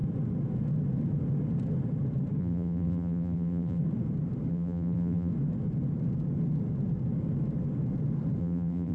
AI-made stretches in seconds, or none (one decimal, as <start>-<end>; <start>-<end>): 2.4-3.8; 4.5-5.3; 8.4-8.9